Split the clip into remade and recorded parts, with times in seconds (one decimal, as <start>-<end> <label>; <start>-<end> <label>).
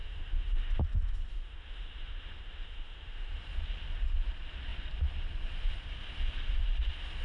0.0-0.7 remade; 0.7-1.3 recorded; 1.3-3.4 remade; 3.4-7.2 recorded